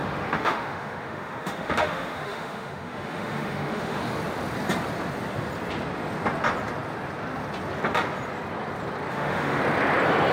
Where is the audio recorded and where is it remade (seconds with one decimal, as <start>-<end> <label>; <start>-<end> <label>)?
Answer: 0.0-4.0 remade; 4.0-9.1 recorded; 9.1-9.6 remade; 9.6-10.3 recorded